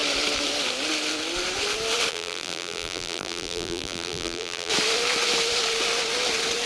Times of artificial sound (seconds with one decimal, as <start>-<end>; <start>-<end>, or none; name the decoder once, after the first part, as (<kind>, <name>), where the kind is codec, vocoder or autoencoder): 2.1-4.7 (vocoder, BigVGAN v2)